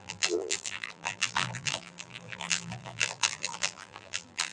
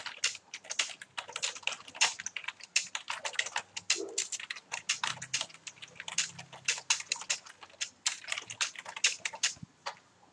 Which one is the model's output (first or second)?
first